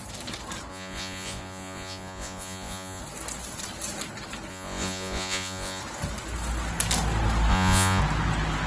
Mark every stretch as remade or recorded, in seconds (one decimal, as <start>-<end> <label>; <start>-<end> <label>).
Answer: 0.0-0.7 recorded; 0.7-3.0 remade; 3.0-4.5 recorded; 4.5-5.8 remade; 5.8-7.5 recorded; 7.5-8.0 remade; 8.0-8.7 recorded